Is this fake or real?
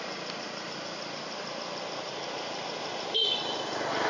real